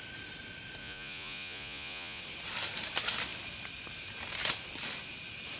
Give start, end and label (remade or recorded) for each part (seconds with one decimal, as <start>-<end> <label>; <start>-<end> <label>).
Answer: 0.0-0.8 recorded; 0.8-2.2 remade; 2.2-5.6 recorded

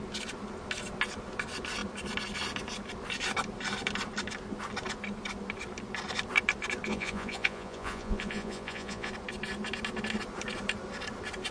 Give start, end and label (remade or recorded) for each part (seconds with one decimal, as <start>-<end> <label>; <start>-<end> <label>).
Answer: 0.0-6.9 recorded; 6.9-9.1 remade; 9.1-11.5 recorded

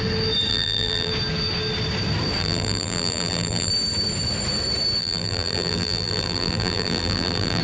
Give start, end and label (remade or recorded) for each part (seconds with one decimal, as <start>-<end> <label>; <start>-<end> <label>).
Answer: 0.0-0.5 recorded; 0.5-1.1 remade; 1.1-2.4 recorded; 2.4-3.7 remade; 3.7-5.0 recorded; 5.0-7.6 remade

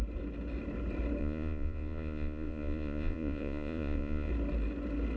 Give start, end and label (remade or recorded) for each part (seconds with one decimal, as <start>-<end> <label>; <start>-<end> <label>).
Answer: 0.0-1.2 recorded; 1.2-4.3 remade; 4.3-5.2 recorded

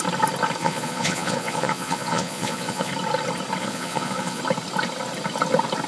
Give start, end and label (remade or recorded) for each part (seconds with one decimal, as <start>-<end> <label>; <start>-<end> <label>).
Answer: 0.0-0.6 recorded; 0.6-2.9 remade; 2.9-3.6 recorded; 3.6-4.4 remade; 4.4-5.9 recorded

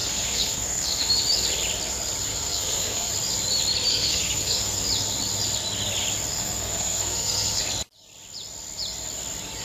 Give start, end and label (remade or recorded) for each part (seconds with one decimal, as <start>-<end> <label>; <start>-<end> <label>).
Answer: 0.0-1.0 remade; 1.0-2.3 recorded; 2.3-3.1 remade; 3.1-3.9 recorded; 3.9-4.8 remade; 4.8-6.3 recorded; 6.3-7.6 remade; 7.6-9.6 recorded

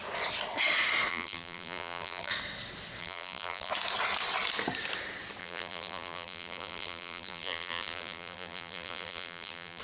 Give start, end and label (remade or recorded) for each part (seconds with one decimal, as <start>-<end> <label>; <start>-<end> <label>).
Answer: 0.0-1.1 recorded; 1.1-2.3 remade; 2.3-3.0 recorded; 3.0-3.7 remade; 3.7-5.4 recorded; 5.4-9.8 remade

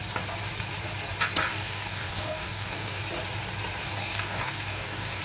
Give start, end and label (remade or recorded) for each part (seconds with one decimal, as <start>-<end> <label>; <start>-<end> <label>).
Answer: 0.0-1.5 recorded; 1.5-3.0 remade; 3.0-3.8 recorded; 3.8-5.2 remade